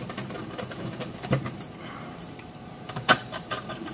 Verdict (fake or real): fake